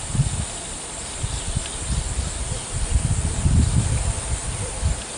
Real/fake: real